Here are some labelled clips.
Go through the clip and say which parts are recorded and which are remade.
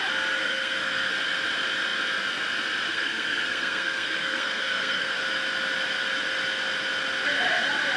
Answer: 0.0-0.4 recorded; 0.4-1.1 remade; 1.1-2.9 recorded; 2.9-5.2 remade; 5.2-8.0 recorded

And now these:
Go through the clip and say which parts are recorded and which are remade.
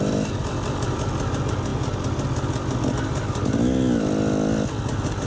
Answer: 0.0-5.3 recorded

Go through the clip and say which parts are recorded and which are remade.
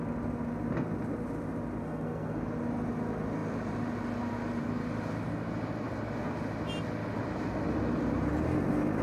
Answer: 0.0-1.8 recorded; 1.8-2.4 remade; 2.4-9.0 recorded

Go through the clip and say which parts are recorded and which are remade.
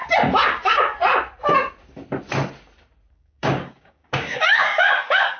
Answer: 0.0-0.5 recorded; 0.5-1.0 remade; 1.0-3.1 recorded; 3.1-5.4 remade